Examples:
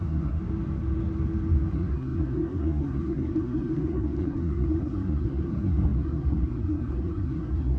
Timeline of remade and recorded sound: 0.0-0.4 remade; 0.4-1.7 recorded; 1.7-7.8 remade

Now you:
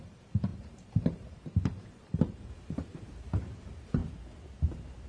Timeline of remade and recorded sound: 0.0-4.0 remade; 4.0-5.1 recorded

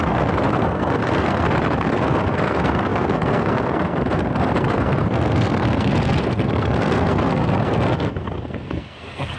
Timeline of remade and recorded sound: 0.0-9.4 remade

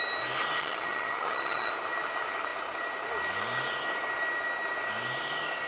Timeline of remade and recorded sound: 0.0-0.6 recorded; 0.6-1.7 remade; 1.7-5.7 recorded

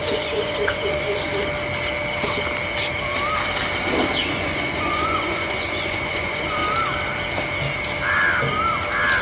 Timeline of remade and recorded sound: 0.0-1.3 remade; 1.3-4.2 recorded; 4.2-6.6 remade; 6.6-9.2 recorded

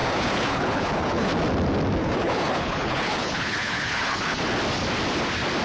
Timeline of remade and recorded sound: 0.0-1.3 remade; 1.3-2.0 recorded; 2.0-4.4 remade; 4.4-5.6 recorded

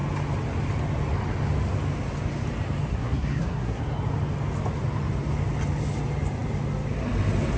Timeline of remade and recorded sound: 0.0-2.9 recorded; 2.9-3.8 remade; 3.8-7.6 recorded

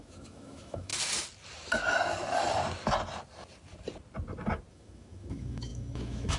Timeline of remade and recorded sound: 0.0-0.9 remade; 0.9-4.7 recorded; 4.7-6.4 remade